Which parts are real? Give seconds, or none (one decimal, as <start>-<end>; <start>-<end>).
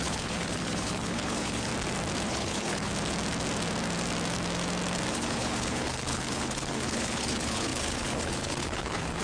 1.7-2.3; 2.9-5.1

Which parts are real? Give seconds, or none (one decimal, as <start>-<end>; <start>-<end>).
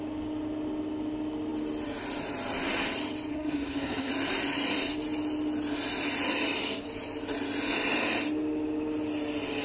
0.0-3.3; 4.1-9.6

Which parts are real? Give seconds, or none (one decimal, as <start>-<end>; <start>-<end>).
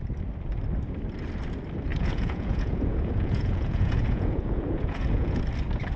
0.0-1.9; 5.4-6.0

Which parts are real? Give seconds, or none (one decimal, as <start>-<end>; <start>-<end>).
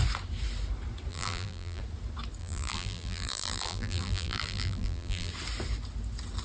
0.0-1.1; 1.8-2.4; 5.3-6.4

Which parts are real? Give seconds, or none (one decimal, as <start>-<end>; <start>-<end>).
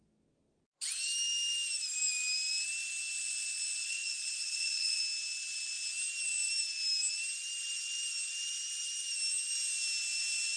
0.0-3.8; 5.0-10.6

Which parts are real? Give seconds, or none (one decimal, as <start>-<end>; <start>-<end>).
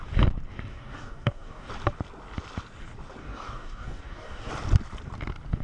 0.0-0.7; 1.7-3.2; 4.5-5.6